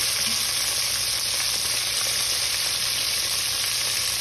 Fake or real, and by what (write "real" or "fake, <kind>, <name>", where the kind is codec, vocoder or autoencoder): real